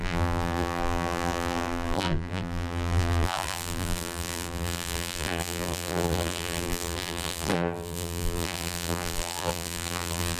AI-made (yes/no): yes